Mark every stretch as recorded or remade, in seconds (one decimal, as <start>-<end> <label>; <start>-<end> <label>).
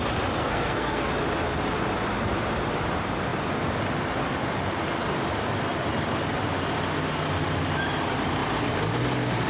0.0-0.4 recorded; 0.4-1.1 remade; 1.1-9.5 recorded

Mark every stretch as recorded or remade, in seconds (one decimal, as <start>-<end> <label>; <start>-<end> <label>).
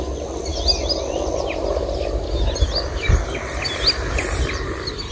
0.0-5.1 recorded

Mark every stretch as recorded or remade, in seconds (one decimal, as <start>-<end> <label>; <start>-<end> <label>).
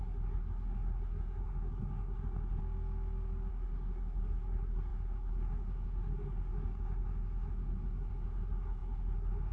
0.0-2.6 remade; 2.6-3.5 recorded; 3.5-9.5 remade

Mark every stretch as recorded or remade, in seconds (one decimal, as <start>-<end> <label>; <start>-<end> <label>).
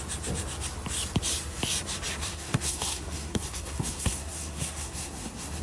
0.0-2.2 recorded; 2.2-5.6 remade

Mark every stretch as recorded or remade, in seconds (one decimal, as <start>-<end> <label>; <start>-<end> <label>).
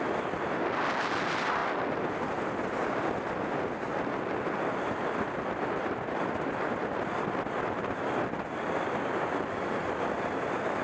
0.0-10.8 recorded